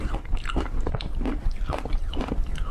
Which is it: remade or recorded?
recorded